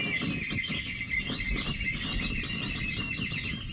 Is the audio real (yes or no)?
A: yes